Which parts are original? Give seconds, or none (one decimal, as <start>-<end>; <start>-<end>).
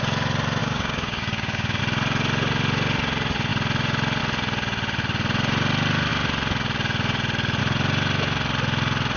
0.0-0.6; 1.8-9.2